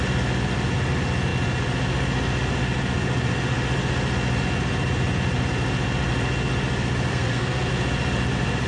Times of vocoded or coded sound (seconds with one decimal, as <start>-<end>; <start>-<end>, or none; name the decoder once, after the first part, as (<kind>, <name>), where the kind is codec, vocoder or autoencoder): 7.1-7.7 (codec, SNAC)